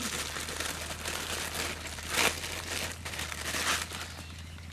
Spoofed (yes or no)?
no